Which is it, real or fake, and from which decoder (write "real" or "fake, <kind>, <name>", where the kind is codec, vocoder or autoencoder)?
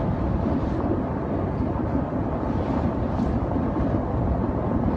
real